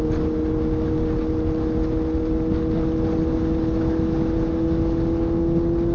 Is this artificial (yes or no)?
no